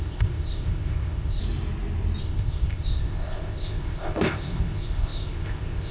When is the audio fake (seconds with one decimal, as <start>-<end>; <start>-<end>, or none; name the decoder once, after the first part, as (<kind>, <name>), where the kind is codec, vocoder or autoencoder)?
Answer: 0.0-1.4 (codec, ZipCodec); 2.2-5.9